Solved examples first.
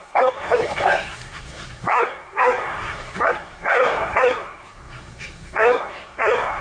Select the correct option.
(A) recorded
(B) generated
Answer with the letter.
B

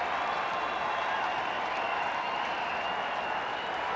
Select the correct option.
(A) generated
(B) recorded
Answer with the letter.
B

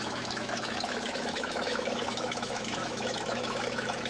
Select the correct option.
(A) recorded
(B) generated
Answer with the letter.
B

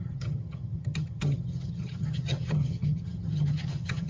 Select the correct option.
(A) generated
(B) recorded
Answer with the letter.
A